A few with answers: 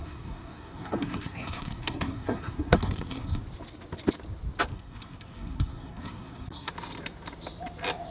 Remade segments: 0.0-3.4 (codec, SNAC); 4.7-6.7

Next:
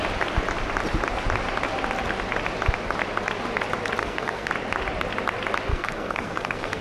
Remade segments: 4.0-4.5 (codec, SNAC); 5.7-6.8

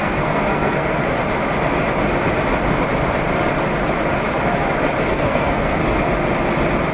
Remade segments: 0.0-1.0 (codec, SNAC); 5.1-5.8